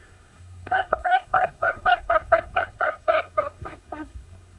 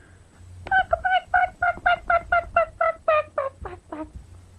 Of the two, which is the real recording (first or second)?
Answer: second